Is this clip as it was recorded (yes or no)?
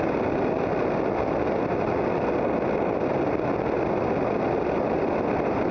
yes